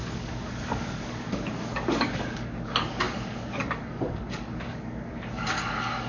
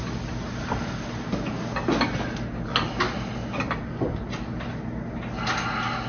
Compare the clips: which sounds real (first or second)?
second